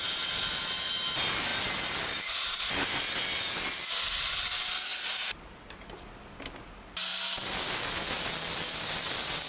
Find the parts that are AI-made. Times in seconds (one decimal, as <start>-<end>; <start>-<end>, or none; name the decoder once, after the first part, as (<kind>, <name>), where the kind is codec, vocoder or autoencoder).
none